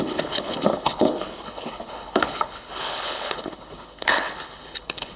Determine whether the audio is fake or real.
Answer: fake